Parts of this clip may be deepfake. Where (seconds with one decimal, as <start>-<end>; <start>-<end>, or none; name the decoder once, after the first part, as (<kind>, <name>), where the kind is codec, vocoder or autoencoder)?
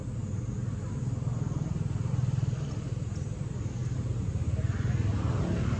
none